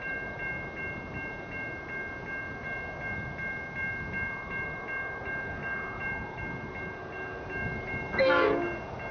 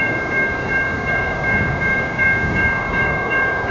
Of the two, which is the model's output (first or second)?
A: second